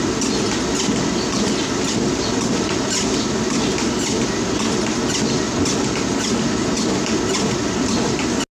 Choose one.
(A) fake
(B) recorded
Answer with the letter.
B